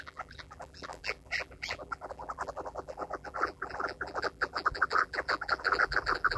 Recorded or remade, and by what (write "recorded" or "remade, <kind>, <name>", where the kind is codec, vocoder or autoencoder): remade, vocoder, BigVGAN v2